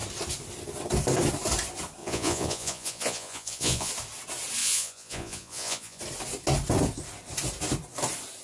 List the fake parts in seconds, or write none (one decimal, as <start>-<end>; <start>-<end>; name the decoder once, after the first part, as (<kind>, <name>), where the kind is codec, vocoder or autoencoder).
2.0-3.9 (vocoder, Vocos); 4.6-6.0